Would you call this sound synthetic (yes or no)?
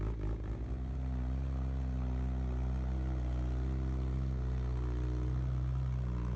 no